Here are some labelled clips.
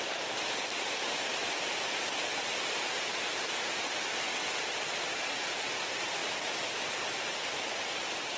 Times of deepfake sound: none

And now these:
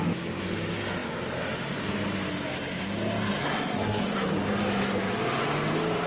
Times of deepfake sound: 3.4-4.3 (codec, SNAC)